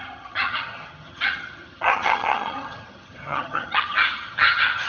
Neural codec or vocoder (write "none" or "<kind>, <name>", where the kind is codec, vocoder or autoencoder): vocoder, HiFi-GAN